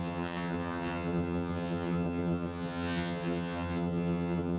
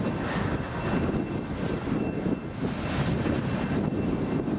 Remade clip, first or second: first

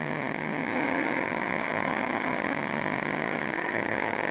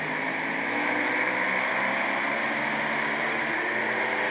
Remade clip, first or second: first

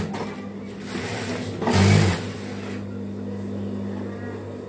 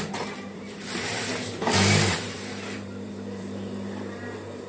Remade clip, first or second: second